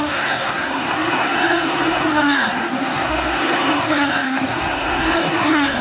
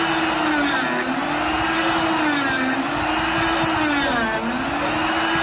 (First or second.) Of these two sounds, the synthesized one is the first